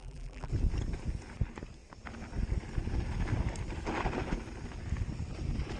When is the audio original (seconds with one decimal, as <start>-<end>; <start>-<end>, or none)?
0.5-5.8